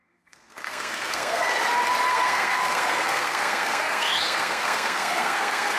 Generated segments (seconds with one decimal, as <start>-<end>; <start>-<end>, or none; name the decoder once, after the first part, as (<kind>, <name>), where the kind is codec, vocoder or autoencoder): 0.0-1.5 (codec, SNAC); 2.1-5.8